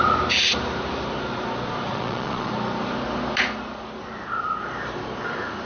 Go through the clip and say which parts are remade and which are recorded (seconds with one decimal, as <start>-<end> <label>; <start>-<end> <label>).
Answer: 0.0-1.9 recorded; 1.9-2.5 remade; 2.5-5.7 recorded

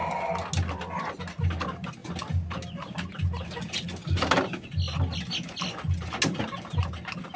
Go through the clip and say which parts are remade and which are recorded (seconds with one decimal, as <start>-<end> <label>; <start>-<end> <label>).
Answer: 0.0-7.4 recorded

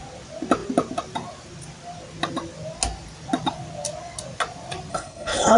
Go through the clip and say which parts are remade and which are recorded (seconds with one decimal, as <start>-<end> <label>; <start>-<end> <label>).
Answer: 0.0-4.9 recorded; 4.9-5.6 remade

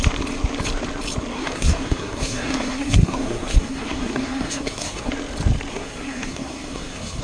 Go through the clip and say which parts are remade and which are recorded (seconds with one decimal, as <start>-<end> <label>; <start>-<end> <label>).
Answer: 0.0-1.3 recorded; 1.3-5.1 remade; 5.1-5.7 recorded; 5.7-7.2 remade